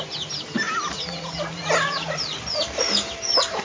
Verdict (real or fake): real